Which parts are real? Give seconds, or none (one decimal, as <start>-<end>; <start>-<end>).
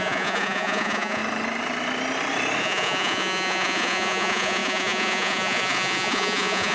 1.2-2.6